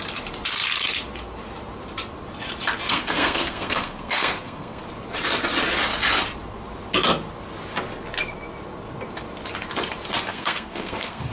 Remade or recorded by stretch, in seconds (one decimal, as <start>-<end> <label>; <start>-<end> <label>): 0.0-2.9 recorded; 2.9-4.8 remade; 4.8-10.3 recorded; 10.3-11.3 remade